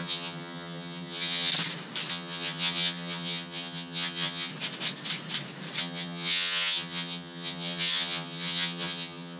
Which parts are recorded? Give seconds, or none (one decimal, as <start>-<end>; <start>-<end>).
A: 1.5-2.1; 4.5-5.8